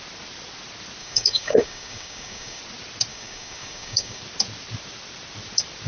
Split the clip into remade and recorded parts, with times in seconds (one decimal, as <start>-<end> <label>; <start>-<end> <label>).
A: 0.0-1.0 recorded; 1.0-2.6 remade; 2.6-3.1 recorded; 3.1-4.2 remade; 4.2-5.9 recorded